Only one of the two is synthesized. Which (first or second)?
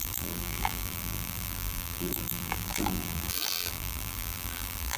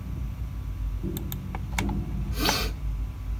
first